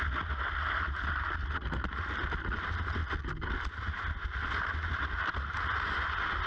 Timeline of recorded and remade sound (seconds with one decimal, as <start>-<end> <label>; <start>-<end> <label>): 0.0-6.5 recorded